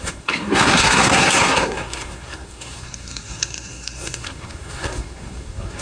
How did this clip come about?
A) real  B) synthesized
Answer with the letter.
B